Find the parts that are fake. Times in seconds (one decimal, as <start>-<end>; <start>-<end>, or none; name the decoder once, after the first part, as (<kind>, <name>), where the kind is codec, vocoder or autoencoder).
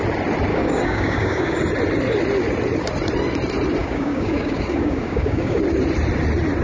0.5-1.6 (codec, DAC); 3.8-5.6